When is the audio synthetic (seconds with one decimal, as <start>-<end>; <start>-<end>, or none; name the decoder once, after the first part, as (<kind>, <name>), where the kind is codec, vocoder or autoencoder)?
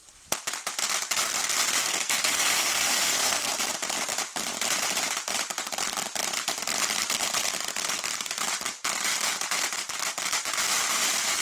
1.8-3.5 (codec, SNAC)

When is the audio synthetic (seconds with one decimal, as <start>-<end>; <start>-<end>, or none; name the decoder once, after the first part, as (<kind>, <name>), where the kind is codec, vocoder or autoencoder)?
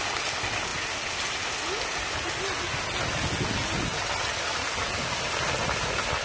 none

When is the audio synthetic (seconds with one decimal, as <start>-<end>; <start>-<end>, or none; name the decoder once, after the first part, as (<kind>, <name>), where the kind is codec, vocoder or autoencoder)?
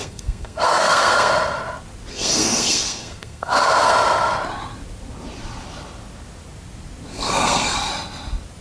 0.0-1.3 (codec, SNAC); 2.1-3.9; 7.1-7.9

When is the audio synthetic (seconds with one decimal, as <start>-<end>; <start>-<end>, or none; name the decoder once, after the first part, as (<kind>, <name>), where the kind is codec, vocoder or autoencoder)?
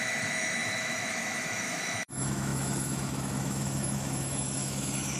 0.0-5.2 (autoencoder, DAC-VAE)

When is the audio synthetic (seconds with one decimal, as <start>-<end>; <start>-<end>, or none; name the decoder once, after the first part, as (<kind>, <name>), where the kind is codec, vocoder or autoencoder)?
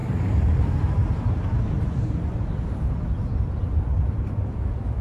0.0-3.0 (vocoder, BigVGAN v2)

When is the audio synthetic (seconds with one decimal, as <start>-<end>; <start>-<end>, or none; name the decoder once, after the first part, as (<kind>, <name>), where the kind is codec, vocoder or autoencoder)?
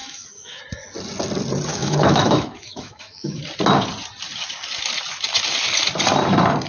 0.0-0.6 (autoencoder, DAC-VAE); 1.7-3.4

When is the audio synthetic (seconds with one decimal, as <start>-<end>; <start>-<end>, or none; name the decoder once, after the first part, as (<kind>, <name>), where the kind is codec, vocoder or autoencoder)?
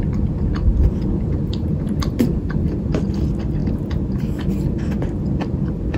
0.7-2.9 (vocoder, BigVGAN v2)